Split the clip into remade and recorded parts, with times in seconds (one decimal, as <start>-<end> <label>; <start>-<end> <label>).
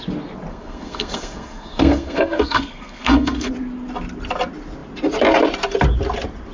0.0-0.5 recorded; 0.5-3.5 remade; 3.5-6.5 recorded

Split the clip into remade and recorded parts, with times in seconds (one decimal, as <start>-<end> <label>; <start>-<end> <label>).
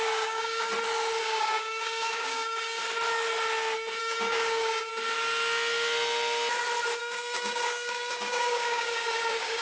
0.0-0.7 remade; 0.7-1.2 recorded; 1.2-2.8 remade; 2.8-4.0 recorded; 4.0-4.9 remade; 4.9-7.0 recorded; 7.0-9.6 remade